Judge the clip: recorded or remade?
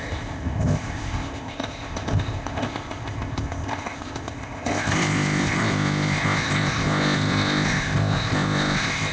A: remade